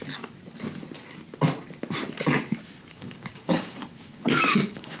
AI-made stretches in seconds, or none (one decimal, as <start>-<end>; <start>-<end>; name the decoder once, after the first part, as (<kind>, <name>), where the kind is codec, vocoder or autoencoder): 2.9-5.0 (codec, DAC)

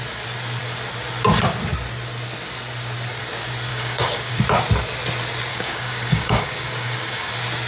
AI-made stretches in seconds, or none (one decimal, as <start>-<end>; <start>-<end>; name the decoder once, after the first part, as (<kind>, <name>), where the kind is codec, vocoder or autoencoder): 3.7-4.4 (codec, DAC); 5.5-7.3

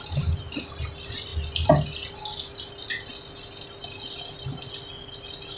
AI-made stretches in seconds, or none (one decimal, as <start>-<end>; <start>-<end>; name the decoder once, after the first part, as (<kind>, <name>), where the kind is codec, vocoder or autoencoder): none